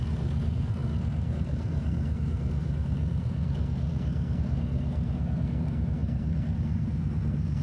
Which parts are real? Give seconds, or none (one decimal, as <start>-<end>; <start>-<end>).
none